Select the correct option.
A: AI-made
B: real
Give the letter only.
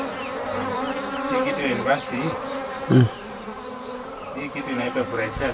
A